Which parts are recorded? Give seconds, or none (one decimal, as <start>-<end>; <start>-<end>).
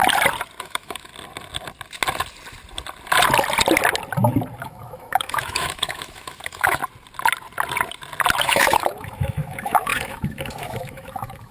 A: 0.0-0.6; 1.1-4.6; 6.8-8.4